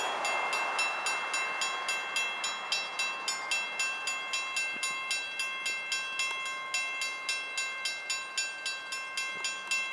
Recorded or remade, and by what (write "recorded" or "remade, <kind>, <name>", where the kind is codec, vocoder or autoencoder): recorded